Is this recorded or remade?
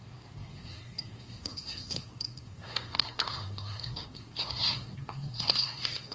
remade